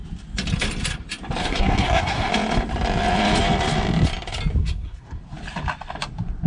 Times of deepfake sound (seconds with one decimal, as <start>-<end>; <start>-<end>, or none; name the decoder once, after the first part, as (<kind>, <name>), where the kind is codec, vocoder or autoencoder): 1.4-2.3 (codec, SNAC); 4.6-5.2